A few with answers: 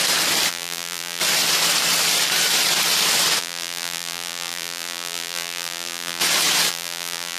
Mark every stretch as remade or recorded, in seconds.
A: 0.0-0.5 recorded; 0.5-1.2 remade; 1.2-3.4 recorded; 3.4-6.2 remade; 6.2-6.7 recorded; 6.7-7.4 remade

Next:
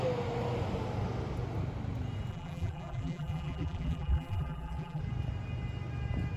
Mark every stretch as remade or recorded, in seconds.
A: 0.0-2.3 recorded; 2.3-5.0 remade; 5.0-6.4 recorded